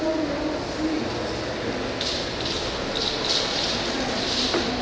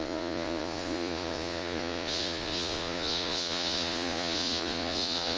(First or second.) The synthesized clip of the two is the second